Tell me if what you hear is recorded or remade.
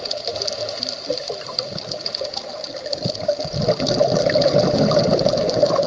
recorded